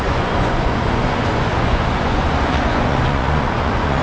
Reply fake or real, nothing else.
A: fake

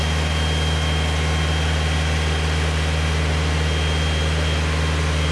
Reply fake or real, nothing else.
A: real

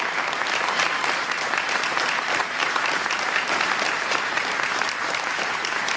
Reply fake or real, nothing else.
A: fake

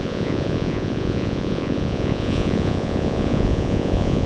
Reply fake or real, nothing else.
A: fake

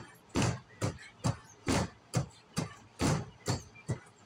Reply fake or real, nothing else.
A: real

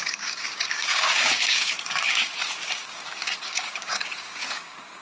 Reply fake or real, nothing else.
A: fake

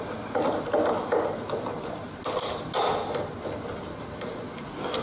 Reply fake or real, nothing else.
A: real